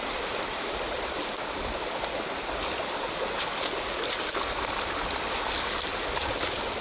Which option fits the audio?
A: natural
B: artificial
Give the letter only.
A